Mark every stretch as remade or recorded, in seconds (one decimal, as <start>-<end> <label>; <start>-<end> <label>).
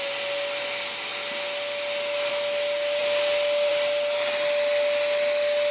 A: 0.0-5.7 recorded